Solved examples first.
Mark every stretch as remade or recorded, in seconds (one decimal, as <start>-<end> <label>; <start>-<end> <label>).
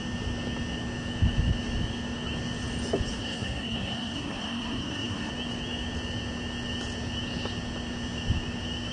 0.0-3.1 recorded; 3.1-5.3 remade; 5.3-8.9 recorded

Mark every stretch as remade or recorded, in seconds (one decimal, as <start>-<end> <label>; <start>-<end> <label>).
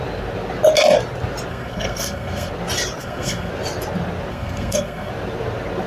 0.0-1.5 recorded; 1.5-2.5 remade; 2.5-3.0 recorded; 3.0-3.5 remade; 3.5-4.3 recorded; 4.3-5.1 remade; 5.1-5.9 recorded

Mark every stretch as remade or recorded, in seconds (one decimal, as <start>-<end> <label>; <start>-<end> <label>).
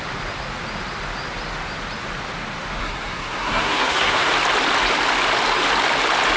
0.0-2.8 recorded; 2.8-4.3 remade; 4.3-6.4 recorded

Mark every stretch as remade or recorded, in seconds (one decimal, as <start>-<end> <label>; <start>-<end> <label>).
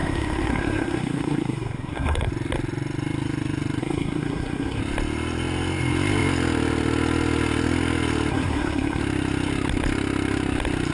0.0-2.3 remade; 2.3-3.8 recorded; 3.8-4.8 remade; 4.8-8.3 recorded; 8.3-9.0 remade; 9.0-10.9 recorded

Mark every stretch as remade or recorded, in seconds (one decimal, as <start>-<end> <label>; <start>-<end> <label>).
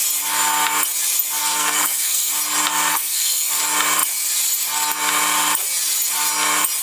0.0-1.4 recorded; 1.4-2.3 remade; 2.3-2.9 recorded; 2.9-3.6 remade; 3.6-6.8 recorded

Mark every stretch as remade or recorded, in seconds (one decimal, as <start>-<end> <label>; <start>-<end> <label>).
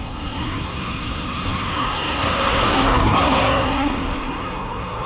0.0-5.1 remade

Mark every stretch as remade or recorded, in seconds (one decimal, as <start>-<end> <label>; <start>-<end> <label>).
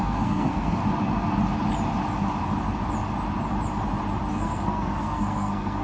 0.0-0.8 remade; 0.8-4.3 recorded; 4.3-5.8 remade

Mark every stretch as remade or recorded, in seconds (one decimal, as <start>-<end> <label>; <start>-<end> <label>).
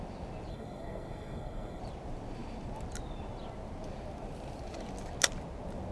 0.0-0.5 recorded; 0.5-1.8 remade; 1.8-5.9 recorded